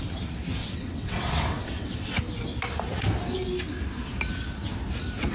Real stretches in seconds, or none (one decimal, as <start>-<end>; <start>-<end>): 0.0-0.6; 2.2-5.3